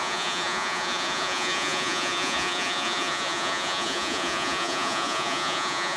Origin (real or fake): fake